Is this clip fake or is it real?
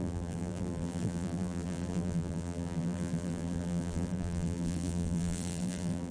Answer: fake